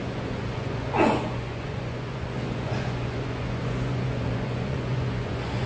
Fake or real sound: fake